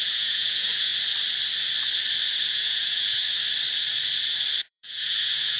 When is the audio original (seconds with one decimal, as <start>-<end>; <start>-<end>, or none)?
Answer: 0.9-2.5; 3.2-4.6